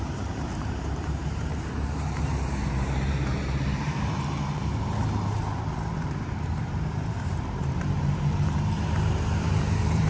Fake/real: fake